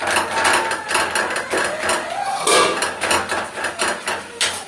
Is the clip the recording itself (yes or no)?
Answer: yes